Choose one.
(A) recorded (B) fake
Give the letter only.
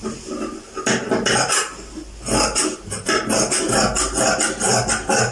A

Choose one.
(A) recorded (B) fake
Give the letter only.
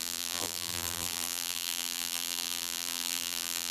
B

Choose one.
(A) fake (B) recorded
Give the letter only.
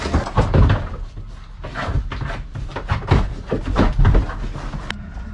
B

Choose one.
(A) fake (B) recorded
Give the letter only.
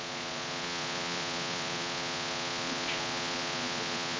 A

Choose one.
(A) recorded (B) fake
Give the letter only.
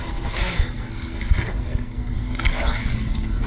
B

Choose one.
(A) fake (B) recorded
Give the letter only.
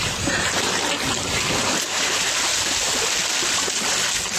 B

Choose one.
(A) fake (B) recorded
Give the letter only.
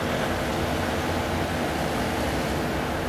B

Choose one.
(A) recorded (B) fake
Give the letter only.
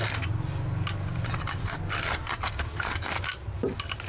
A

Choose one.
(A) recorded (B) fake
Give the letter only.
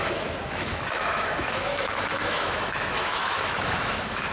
B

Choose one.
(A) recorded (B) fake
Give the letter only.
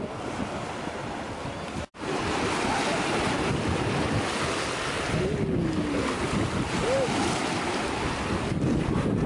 A